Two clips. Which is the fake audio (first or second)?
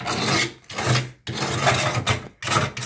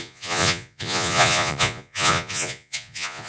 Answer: second